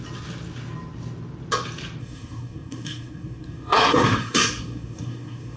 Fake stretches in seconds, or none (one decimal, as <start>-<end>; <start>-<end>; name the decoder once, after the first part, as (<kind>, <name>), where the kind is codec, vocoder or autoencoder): 2.0-5.6 (codec, SNAC)